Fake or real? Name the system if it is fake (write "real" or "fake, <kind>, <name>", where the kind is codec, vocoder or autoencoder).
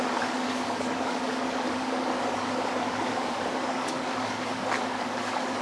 fake, codec, DAC